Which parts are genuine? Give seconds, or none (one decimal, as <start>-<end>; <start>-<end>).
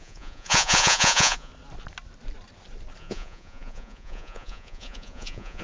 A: 1.5-3.0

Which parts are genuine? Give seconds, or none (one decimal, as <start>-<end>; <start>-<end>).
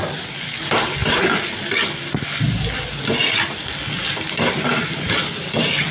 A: 0.0-5.9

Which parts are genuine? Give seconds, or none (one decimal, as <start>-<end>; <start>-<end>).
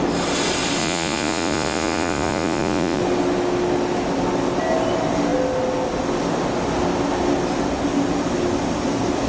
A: 0.0-0.8; 3.0-9.3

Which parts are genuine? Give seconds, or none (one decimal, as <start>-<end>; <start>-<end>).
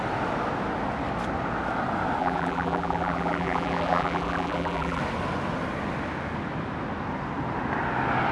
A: 0.0-2.2; 5.0-8.3